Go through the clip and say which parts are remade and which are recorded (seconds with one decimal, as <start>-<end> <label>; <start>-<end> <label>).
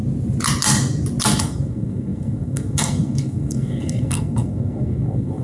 0.0-1.4 recorded; 1.4-5.4 remade